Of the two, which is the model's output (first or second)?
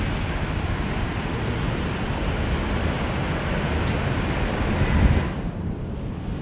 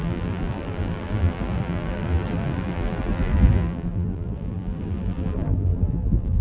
second